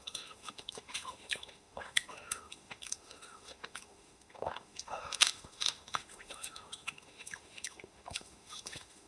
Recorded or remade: remade